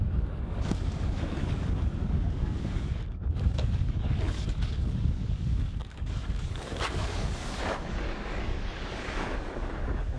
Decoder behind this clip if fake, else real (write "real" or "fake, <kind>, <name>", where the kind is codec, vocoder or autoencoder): fake, codec, DAC